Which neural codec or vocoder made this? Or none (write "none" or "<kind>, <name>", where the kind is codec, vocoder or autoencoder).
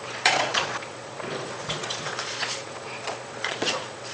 vocoder, Vocos